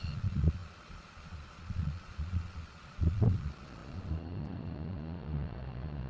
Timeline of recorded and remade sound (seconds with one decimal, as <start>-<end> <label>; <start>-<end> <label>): 0.0-6.1 remade